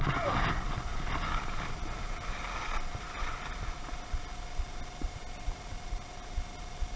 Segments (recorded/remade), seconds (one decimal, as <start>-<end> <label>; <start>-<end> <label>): 0.0-7.0 recorded